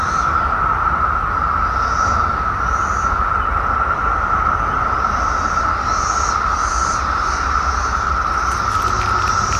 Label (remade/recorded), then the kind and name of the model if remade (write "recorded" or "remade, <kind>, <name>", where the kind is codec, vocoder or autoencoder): recorded